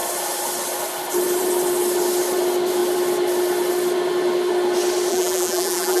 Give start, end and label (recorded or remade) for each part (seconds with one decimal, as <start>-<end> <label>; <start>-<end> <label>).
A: 0.0-5.1 recorded; 5.1-6.0 remade